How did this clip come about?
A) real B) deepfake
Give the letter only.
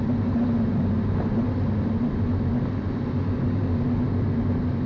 A